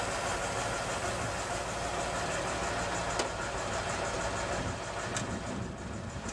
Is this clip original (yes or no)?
yes